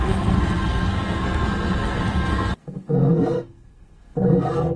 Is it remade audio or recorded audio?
remade